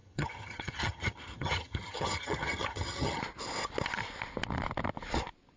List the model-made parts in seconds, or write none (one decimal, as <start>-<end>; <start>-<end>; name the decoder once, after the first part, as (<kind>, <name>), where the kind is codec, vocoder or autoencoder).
0.0-3.2 (vocoder, HiFi-GAN)